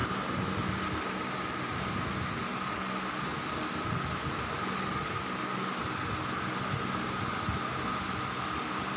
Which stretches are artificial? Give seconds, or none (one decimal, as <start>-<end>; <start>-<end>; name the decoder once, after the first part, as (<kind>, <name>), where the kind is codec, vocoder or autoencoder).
none